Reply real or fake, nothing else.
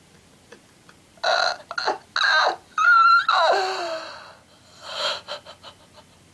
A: real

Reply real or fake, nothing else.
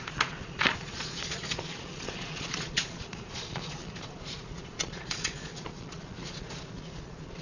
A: fake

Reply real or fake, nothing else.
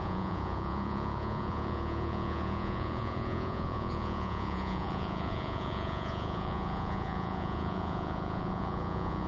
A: fake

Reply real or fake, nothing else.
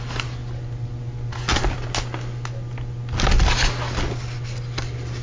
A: real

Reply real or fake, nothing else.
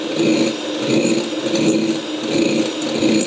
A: real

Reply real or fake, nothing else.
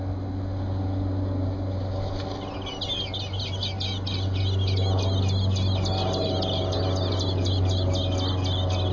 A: real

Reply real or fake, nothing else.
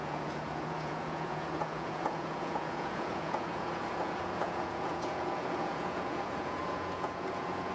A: fake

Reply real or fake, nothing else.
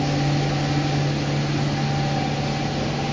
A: real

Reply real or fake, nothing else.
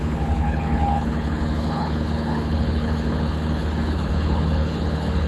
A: fake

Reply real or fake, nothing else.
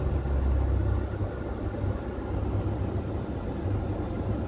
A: real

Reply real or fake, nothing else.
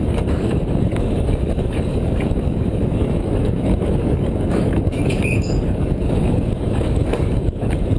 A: fake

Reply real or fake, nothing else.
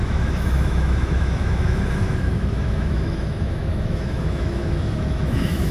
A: fake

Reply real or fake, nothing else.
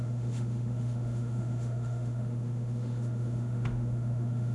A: fake